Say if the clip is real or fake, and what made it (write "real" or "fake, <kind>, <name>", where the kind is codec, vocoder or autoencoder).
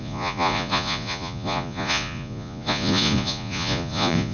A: fake, vocoder, Vocos